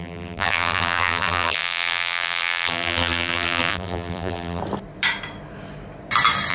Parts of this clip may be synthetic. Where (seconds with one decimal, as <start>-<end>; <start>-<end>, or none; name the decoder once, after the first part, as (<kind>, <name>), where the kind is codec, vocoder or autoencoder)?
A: 0.0-4.6 (vocoder, BigVGAN v2)